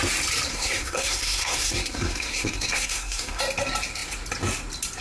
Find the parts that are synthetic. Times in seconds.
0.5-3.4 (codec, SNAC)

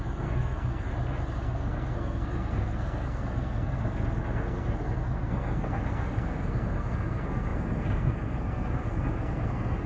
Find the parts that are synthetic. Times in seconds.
0.0-0.9 (codec, SNAC); 1.4-9.9

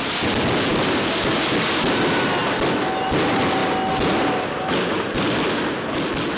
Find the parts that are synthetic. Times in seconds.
none

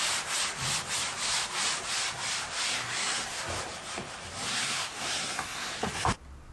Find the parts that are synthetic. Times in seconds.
2.7-3.4 (codec, SNAC); 4.5-5.9

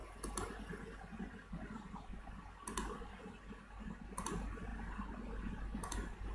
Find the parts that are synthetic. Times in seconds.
none

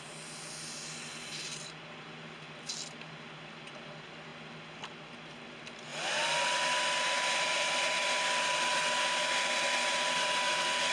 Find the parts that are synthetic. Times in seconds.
none